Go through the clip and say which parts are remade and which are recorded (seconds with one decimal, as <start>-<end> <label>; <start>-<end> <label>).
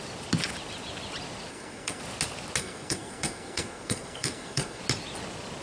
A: 0.0-1.5 recorded; 1.5-2.0 remade; 2.0-2.6 recorded; 2.6-4.8 remade; 4.8-5.6 recorded